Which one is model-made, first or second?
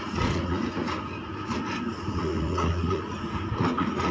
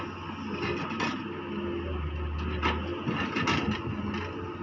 first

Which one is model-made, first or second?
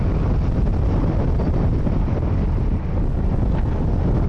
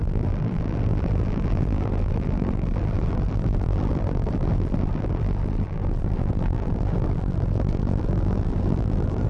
second